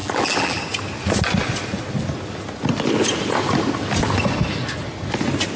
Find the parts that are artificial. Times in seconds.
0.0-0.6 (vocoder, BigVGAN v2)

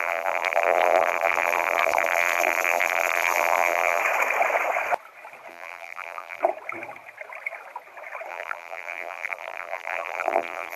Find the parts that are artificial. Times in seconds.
0.0-4.0 (vocoder, BigVGAN v2); 5.5-6.4; 8.3-10.8

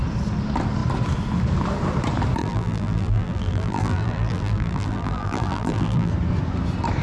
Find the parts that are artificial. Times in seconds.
2.4-6.1 (vocoder, BigVGAN v2)